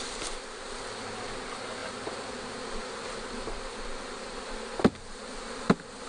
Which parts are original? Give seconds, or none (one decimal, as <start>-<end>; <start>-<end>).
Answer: 0.0-6.1